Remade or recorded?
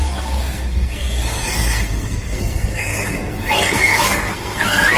remade